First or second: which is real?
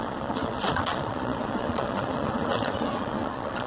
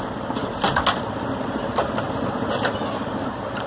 second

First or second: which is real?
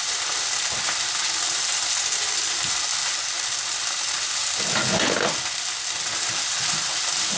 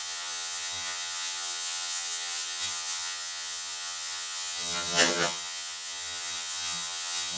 first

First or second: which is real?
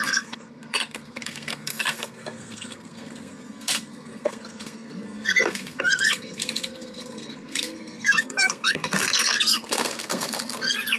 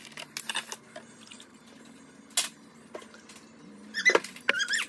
second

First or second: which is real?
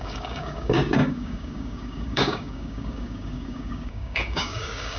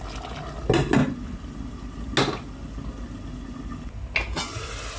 second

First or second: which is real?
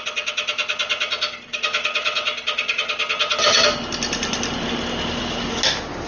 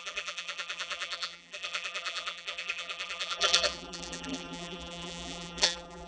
first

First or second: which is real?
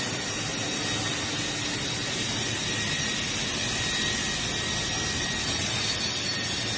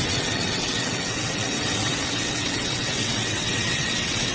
first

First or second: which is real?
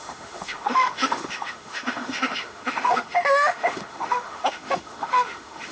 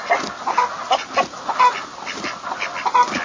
second